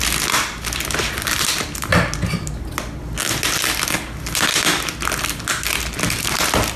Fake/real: real